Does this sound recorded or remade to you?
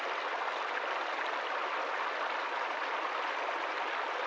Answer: recorded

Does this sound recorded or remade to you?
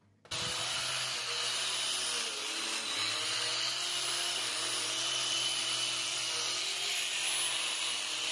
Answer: recorded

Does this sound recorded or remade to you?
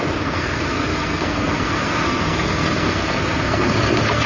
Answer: remade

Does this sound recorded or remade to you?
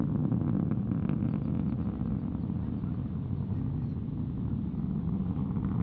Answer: recorded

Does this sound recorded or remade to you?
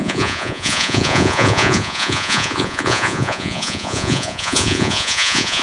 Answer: remade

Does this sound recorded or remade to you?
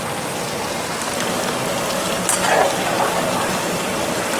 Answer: recorded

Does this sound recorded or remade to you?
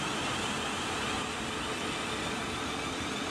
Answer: recorded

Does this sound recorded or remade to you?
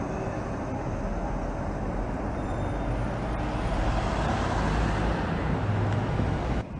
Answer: recorded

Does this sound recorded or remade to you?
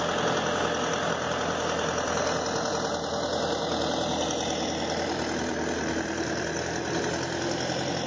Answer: recorded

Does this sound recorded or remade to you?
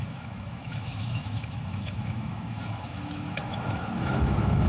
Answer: remade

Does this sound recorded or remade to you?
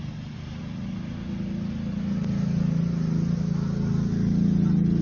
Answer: recorded